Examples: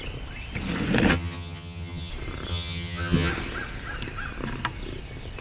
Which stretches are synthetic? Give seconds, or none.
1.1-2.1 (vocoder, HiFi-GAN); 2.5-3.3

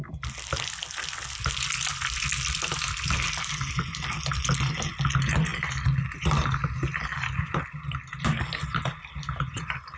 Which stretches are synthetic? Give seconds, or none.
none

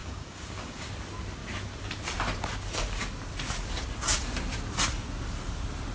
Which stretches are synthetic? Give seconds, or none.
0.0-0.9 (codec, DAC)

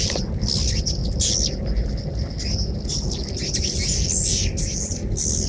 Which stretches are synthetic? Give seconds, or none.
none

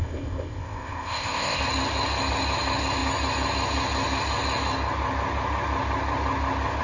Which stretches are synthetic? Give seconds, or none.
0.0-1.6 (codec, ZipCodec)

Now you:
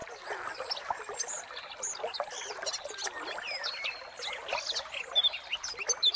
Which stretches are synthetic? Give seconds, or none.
none

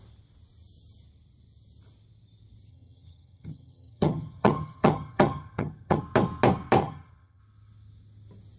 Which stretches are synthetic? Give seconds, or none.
2.7-6.0 (vocoder, HiFi-GAN); 6.8-7.4